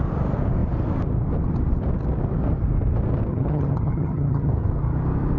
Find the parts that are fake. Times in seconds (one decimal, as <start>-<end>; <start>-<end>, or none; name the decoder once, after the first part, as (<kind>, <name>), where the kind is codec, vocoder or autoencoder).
3.3-4.5 (vocoder, HiFi-GAN)